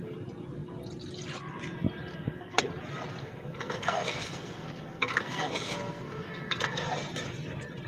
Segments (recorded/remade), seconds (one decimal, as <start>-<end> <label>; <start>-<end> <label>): 0.0-2.1 recorded; 2.1-2.7 remade; 2.7-3.2 recorded; 3.2-6.9 remade; 6.9-7.9 recorded